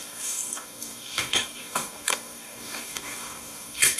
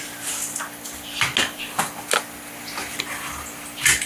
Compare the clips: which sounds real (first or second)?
second